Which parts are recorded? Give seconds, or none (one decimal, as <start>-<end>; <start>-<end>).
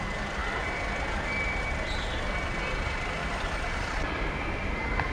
0.0-0.4; 1.6-3.2